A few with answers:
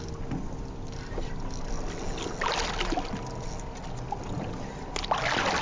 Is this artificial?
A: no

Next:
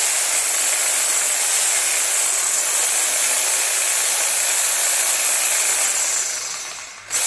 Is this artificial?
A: no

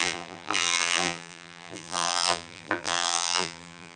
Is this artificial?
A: yes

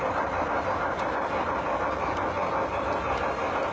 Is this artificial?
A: no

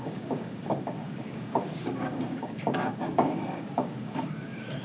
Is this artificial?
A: yes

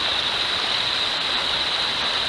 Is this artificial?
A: no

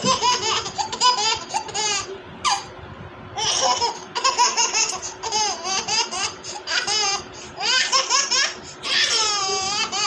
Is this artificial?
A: yes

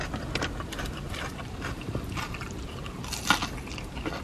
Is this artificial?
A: no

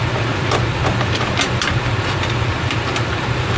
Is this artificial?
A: yes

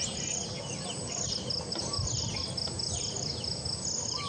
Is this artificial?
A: no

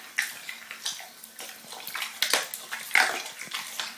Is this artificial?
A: no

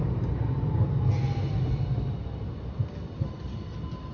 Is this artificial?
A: no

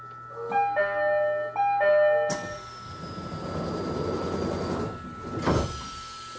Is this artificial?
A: no